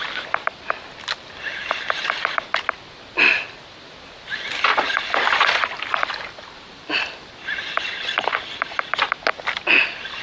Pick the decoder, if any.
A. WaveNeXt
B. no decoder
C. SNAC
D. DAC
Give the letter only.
B